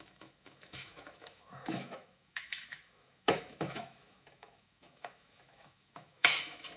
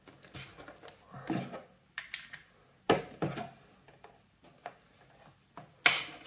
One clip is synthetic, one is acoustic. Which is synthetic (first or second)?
first